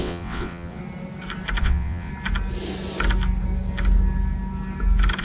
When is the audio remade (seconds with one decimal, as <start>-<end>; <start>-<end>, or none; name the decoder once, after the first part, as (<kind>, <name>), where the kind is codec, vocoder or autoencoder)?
0.0-0.8 (vocoder, WaveNeXt); 1.6-2.1